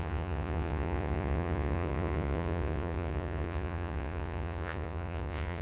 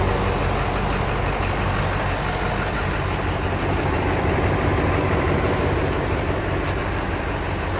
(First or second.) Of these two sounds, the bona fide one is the second